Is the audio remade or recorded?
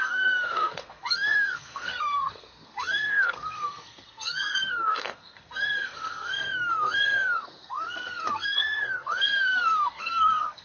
remade